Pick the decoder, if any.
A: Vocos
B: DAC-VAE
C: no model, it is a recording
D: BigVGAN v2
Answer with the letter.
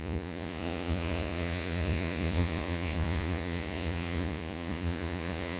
A